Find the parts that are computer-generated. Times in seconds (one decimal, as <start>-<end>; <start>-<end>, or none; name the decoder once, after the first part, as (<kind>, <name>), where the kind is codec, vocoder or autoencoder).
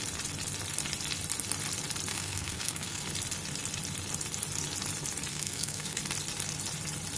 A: 2.1-3.0 (codec, SNAC); 5.3-6.0